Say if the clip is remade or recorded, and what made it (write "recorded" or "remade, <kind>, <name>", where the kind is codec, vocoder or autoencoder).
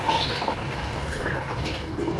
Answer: remade, codec, DAC